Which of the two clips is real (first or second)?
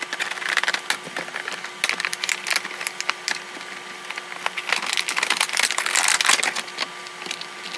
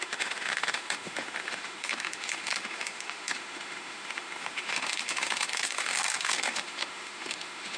first